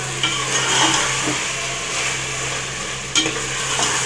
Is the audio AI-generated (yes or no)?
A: no